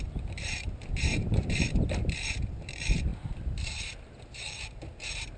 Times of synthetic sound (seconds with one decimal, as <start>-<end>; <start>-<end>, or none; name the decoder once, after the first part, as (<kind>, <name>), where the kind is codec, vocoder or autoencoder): 0.0-5.4 (vocoder, BigVGAN v2)